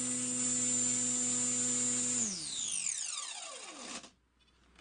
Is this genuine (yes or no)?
yes